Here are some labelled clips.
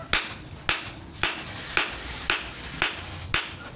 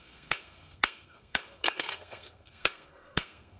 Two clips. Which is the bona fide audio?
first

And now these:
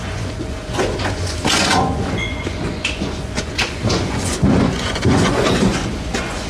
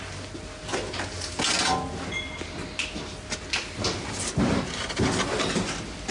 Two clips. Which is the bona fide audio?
second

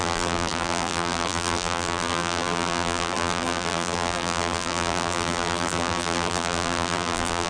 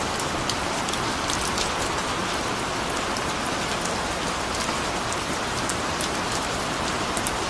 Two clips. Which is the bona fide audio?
second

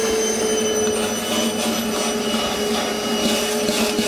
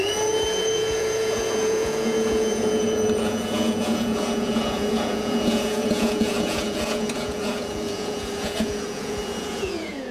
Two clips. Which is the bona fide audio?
first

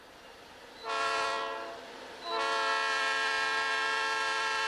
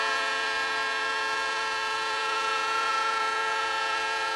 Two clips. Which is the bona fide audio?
first